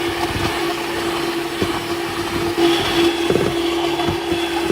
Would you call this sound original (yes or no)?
yes